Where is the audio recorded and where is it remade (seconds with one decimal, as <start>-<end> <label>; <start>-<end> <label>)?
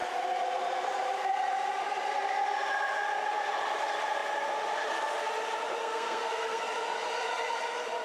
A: 0.0-5.8 recorded; 5.8-6.6 remade; 6.6-8.0 recorded